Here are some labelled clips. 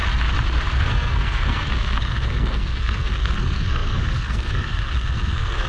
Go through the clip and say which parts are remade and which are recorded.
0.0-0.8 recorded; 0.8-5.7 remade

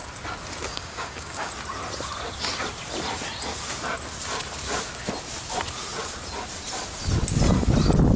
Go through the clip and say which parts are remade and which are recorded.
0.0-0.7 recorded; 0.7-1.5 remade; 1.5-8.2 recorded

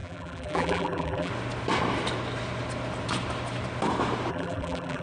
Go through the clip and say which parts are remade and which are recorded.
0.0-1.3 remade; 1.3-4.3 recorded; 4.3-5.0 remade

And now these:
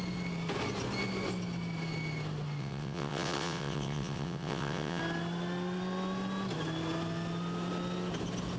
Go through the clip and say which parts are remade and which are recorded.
0.0-2.6 recorded; 2.6-5.0 remade; 5.0-8.6 recorded

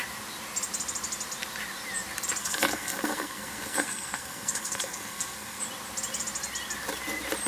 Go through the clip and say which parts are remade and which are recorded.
0.0-2.4 recorded; 2.4-5.6 remade; 5.6-7.5 recorded

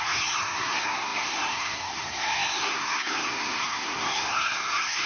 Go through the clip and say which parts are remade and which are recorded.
0.0-5.1 remade